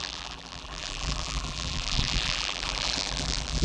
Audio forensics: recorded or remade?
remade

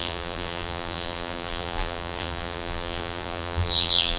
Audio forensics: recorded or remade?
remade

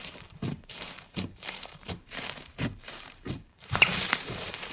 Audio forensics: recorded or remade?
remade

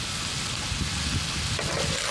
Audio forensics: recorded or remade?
recorded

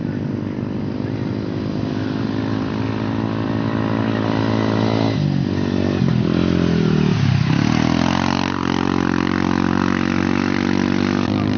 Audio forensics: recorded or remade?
recorded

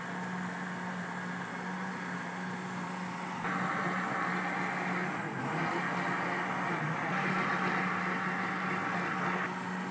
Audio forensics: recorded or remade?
recorded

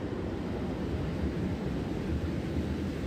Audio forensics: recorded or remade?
remade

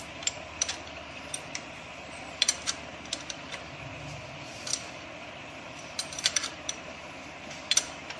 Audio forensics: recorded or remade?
remade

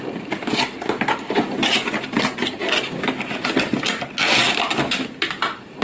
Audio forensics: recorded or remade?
recorded